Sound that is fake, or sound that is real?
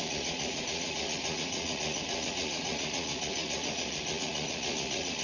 fake